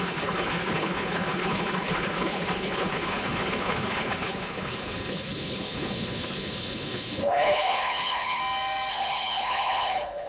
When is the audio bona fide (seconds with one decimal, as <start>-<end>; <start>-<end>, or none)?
8.4-8.9